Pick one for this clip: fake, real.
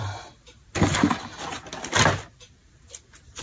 real